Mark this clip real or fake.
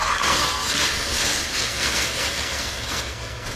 fake